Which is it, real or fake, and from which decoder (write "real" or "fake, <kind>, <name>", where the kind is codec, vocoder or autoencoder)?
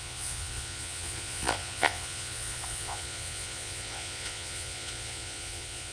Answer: fake, vocoder, Vocos